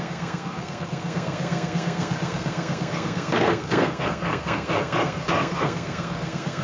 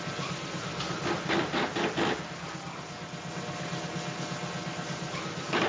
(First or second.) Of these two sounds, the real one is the second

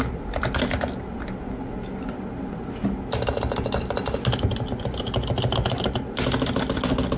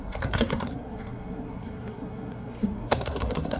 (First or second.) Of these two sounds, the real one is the first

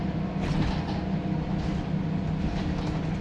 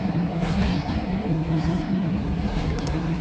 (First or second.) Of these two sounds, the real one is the first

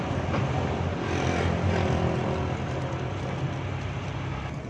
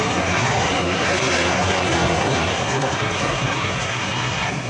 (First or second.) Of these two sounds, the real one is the first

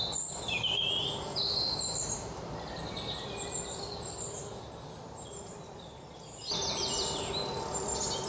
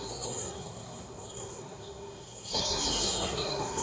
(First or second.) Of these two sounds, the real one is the first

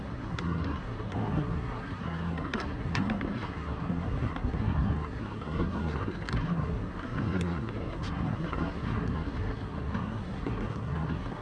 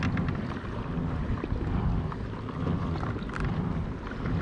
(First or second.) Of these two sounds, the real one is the second